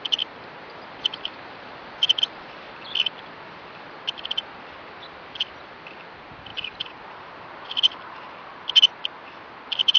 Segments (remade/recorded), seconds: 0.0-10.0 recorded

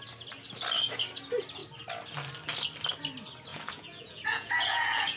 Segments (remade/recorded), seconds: 0.0-3.5 recorded; 3.5-5.2 remade

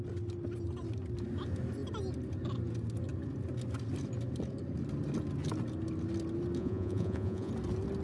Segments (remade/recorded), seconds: 0.0-6.6 recorded; 6.6-7.5 remade; 7.5-8.0 recorded

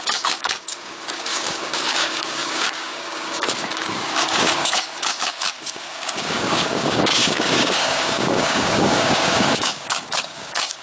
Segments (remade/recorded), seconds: 0.0-10.8 remade

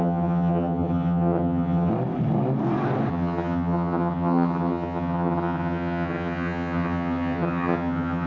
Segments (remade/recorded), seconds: 0.0-1.9 remade; 1.9-3.1 recorded; 3.1-8.3 remade

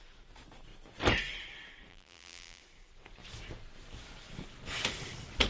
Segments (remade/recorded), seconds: 0.0-1.9 recorded; 1.9-2.6 remade; 2.6-5.5 recorded

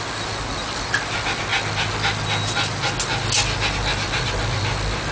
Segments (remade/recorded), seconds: 0.0-5.1 recorded